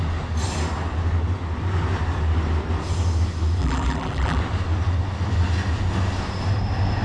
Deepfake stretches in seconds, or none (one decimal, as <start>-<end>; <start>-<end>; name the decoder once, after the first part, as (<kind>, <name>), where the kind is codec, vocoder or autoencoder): 3.6-4.4 (vocoder, BigVGAN v2)